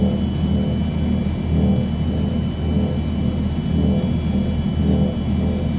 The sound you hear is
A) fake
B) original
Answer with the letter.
B